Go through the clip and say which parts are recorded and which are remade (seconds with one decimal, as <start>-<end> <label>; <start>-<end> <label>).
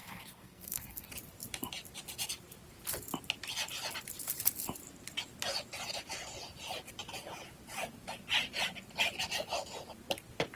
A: 0.0-1.1 remade; 1.1-10.6 recorded